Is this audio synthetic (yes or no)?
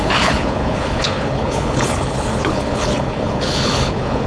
yes